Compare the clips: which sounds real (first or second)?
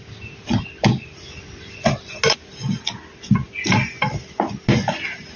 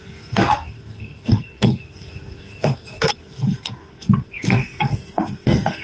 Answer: first